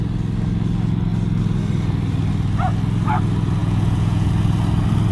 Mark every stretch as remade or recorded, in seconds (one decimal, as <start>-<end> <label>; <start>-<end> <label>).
0.0-3.6 recorded; 3.6-4.3 remade; 4.3-5.1 recorded